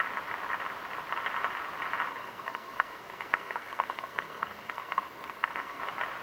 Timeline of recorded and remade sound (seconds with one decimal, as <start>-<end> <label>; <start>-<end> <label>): 0.0-2.1 recorded; 2.1-5.8 remade; 5.8-6.2 recorded